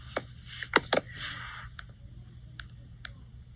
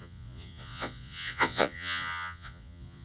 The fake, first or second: second